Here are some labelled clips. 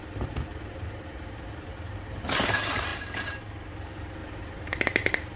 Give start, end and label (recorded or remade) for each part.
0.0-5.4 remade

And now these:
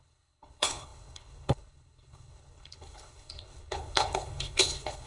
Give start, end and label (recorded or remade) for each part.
0.0-5.1 remade

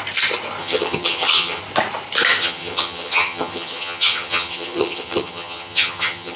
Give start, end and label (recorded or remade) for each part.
0.0-0.6 recorded; 0.6-1.6 remade; 1.6-2.4 recorded; 2.4-6.4 remade

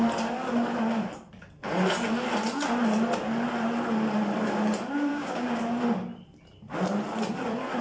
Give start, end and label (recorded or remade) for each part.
0.0-5.1 recorded; 5.1-5.6 remade; 5.6-7.8 recorded

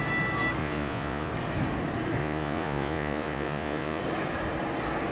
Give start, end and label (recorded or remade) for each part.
0.0-0.6 recorded; 0.6-1.3 remade; 1.3-2.2 recorded; 2.2-4.0 remade; 4.0-5.1 recorded

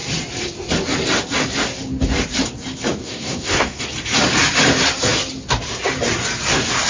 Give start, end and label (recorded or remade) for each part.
0.0-3.0 recorded; 3.0-3.8 remade; 3.8-6.9 recorded

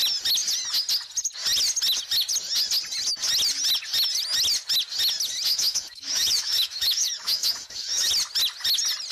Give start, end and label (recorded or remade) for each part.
0.0-5.5 recorded; 5.5-8.1 remade; 8.1-9.1 recorded